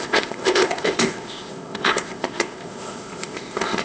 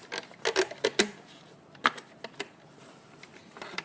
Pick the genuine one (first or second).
second